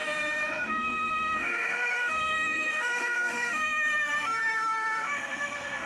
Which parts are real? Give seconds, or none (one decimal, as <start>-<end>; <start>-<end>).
none